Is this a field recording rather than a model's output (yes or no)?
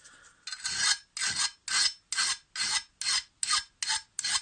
yes